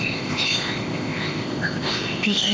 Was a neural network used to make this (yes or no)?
yes